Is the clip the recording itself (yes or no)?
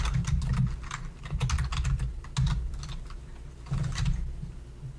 yes